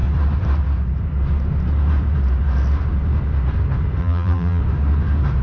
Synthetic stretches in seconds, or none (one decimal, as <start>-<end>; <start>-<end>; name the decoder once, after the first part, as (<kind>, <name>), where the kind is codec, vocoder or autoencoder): 4.0-4.6 (vocoder, BigVGAN v2)